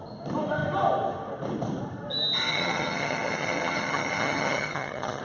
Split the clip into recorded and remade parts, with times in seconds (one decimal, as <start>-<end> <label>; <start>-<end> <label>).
0.0-2.5 recorded; 2.5-5.2 remade